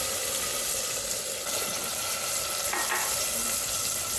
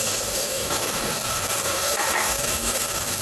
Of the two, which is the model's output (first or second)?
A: second